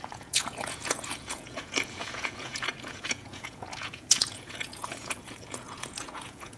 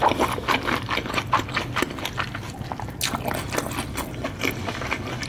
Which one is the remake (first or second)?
first